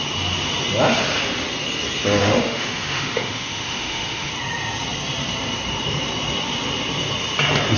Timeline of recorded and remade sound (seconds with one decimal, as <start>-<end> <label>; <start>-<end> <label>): 0.0-2.2 recorded; 2.2-4.3 remade; 4.3-7.8 recorded